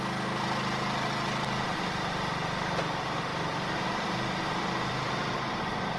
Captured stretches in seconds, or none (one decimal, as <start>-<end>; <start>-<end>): 0.0-3.3; 5.6-6.0